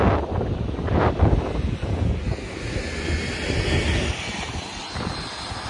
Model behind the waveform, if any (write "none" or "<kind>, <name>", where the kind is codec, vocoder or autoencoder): none